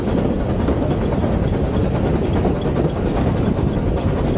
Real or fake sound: real